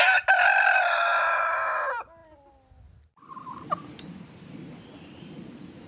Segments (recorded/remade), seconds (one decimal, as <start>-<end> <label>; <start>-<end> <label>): 0.0-5.9 recorded